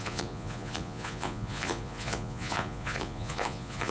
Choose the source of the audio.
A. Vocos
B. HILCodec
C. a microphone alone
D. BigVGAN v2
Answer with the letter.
A